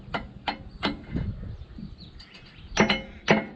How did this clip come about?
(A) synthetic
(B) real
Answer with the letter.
B